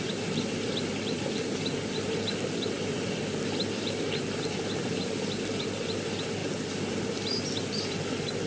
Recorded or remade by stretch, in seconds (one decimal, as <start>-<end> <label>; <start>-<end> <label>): 0.0-8.5 recorded